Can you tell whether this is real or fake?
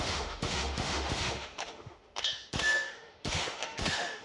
fake